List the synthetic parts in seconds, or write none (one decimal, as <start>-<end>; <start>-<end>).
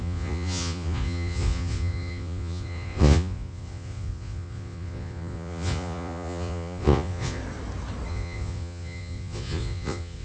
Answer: 0.0-7.4; 8.1-10.2